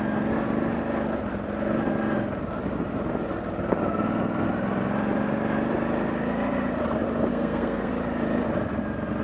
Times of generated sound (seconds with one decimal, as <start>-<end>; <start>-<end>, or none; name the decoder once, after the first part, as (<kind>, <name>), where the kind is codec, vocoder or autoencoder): 7.3-7.9 (codec, SNAC)